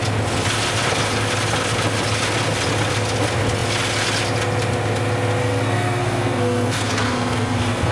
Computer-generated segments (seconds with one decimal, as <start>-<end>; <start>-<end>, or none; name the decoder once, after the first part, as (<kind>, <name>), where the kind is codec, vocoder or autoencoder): 5.4-7.9 (codec, SNAC)